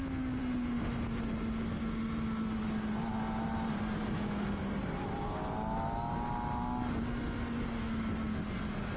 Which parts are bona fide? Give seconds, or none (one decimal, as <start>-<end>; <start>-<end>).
0.0-9.0